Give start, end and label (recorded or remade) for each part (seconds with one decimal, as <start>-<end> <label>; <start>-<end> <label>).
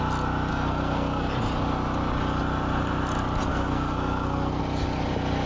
0.0-0.5 recorded; 0.5-1.3 remade; 1.3-3.5 recorded; 3.5-4.6 remade; 4.6-5.5 recorded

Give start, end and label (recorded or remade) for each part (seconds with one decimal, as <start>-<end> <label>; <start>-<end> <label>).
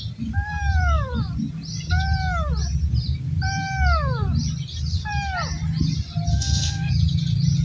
0.0-6.3 recorded; 6.3-6.9 remade; 6.9-7.6 recorded